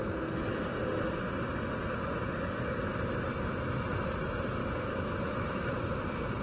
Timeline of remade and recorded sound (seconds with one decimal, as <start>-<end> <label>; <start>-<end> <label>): 0.0-4.6 recorded; 4.6-6.4 remade